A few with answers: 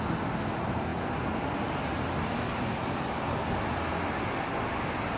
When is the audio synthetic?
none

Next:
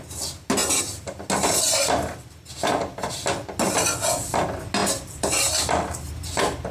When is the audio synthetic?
4.8-6.1

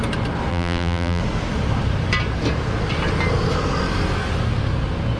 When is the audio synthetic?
0.5-1.2

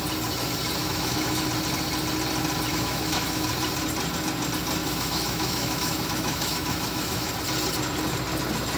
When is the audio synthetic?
0.8-1.5; 2.7-3.5; 4.8-7.3

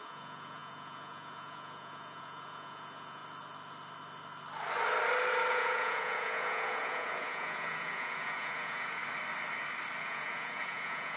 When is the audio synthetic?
0.0-3.2; 5.5-9.0; 10.0-11.2